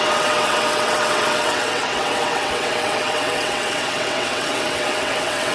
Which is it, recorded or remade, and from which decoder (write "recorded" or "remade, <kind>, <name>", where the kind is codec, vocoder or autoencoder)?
remade, vocoder, WaveNeXt